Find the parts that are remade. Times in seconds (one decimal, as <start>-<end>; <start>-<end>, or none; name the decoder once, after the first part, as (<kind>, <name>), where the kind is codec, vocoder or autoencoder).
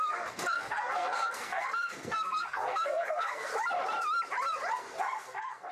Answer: 0.0-3.5 (codec, SNAC); 4.7-5.7